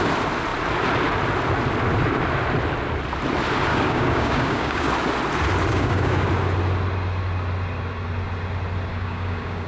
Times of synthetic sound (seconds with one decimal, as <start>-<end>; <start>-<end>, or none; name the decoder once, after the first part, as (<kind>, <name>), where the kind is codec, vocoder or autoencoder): 3.7-4.9 (codec, DAC); 5.7-6.3; 8.9-9.7